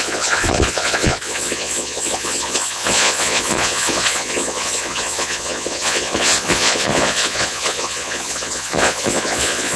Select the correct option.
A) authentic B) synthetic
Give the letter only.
B